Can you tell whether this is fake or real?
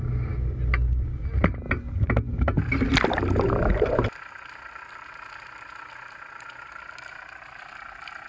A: real